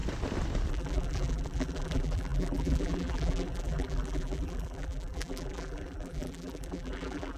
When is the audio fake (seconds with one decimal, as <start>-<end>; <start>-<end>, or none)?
0.7-7.4